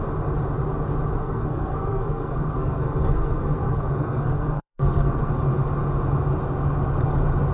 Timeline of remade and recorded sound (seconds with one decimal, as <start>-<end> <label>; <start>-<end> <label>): 0.0-1.2 recorded; 1.2-5.3 remade; 5.3-7.5 recorded